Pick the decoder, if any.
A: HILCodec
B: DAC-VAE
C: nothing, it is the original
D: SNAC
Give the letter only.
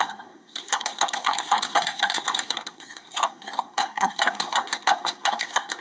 D